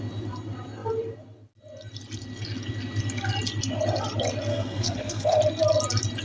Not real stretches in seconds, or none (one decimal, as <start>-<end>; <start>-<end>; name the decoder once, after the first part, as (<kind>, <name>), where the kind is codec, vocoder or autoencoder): 4.5-5.4 (codec, SNAC)